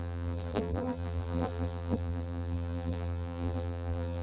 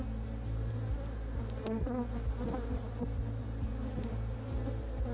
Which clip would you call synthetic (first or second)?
first